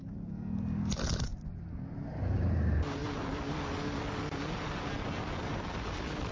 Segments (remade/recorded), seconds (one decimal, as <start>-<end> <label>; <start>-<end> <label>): 0.0-6.3 recorded